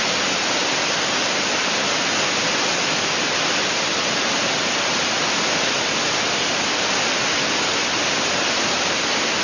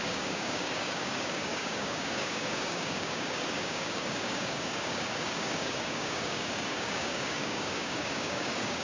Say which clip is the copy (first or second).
second